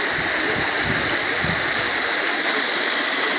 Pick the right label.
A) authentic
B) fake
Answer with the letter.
A